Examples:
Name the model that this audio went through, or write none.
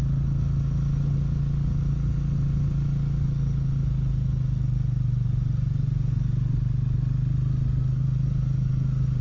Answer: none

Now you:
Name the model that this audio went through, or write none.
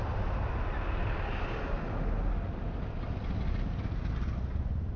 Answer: none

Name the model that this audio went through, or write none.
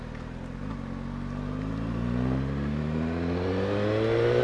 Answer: none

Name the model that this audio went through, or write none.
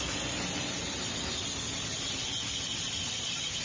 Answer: vocoder, BigVGAN v2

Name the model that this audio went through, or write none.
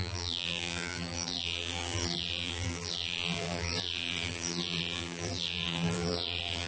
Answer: vocoder, BigVGAN v2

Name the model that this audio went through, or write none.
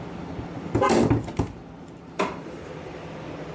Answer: vocoder, BigVGAN v2